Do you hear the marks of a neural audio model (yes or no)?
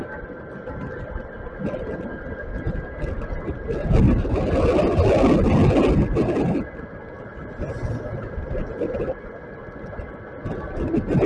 no